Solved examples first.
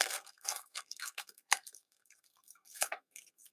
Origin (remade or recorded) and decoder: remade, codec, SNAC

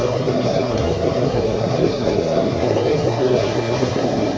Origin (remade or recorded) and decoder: remade, codec, SNAC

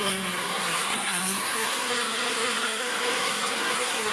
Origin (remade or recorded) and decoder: remade, codec, SNAC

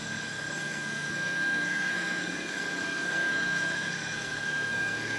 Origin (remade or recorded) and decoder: remade, codec, SNAC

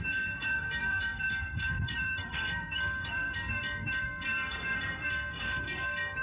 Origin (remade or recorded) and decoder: remade, codec, SNAC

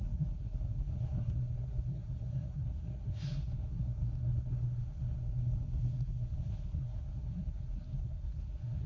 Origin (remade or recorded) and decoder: remade, codec, SNAC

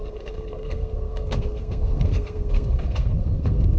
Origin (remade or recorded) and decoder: remade, codec, SNAC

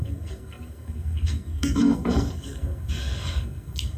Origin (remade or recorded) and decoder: remade, codec, SNAC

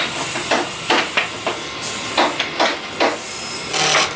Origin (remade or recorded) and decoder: recorded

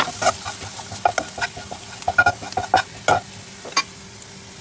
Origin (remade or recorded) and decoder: recorded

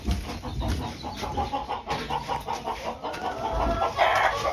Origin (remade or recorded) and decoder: recorded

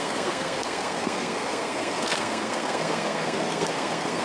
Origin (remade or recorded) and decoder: remade, codec, SNAC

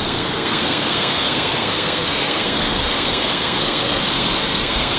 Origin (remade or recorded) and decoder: remade, codec, SNAC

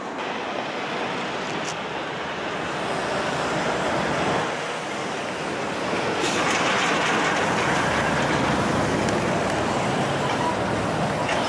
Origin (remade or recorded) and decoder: recorded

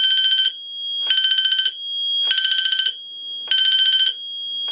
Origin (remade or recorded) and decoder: recorded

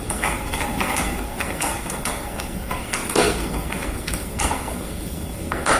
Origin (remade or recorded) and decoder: remade, codec, SNAC